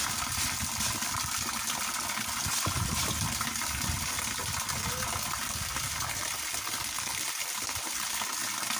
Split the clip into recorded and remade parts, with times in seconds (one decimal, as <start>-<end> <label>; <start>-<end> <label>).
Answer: 0.0-8.8 recorded